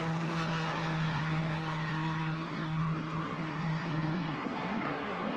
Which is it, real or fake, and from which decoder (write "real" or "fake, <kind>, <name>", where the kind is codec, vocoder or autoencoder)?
fake, codec, SNAC